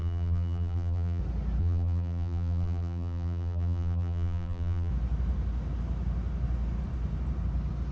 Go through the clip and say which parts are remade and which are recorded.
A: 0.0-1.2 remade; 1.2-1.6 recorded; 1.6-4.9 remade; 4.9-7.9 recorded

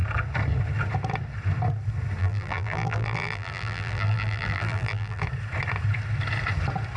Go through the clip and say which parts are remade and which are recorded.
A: 0.0-2.2 recorded; 2.2-5.2 remade; 5.2-7.0 recorded

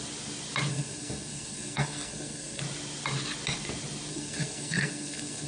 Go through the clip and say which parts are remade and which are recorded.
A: 0.0-0.7 recorded; 0.7-2.6 remade; 2.6-4.1 recorded; 4.1-5.5 remade

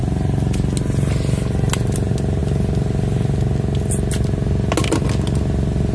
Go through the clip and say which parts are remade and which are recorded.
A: 0.0-5.9 recorded

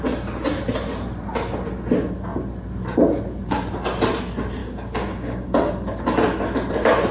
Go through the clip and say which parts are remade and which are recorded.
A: 0.0-4.6 recorded; 4.6-5.7 remade; 5.7-7.1 recorded

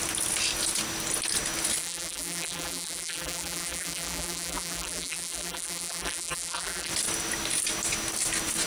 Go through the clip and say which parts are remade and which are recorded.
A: 0.0-1.8 recorded; 1.8-6.9 remade; 6.9-8.7 recorded